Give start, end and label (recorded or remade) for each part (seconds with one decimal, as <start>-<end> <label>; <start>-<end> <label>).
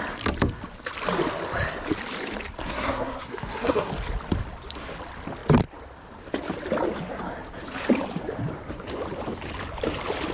0.0-2.6 recorded; 2.6-3.9 remade; 3.9-10.3 recorded